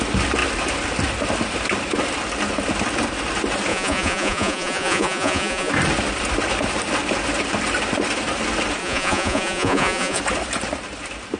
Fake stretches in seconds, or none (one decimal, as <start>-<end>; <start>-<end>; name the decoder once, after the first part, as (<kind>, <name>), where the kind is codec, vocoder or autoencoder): 3.7-5.7 (vocoder, Vocos); 8.8-10.2